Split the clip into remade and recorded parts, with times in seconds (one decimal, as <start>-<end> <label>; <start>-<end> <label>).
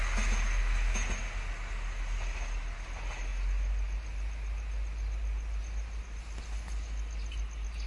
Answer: 0.0-7.9 recorded